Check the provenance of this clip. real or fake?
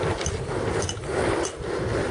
real